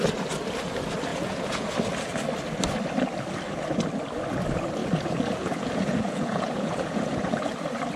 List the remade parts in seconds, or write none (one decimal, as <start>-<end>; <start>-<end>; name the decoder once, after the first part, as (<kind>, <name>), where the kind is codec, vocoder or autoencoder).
1.1-1.7 (vocoder, Vocos); 4.8-7.5